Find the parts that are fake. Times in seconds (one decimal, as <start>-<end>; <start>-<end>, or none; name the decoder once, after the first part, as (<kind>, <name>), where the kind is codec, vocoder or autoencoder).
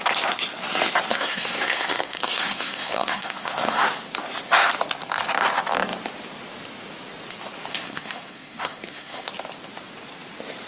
1.1-4.1 (codec, SNAC); 7.7-9.3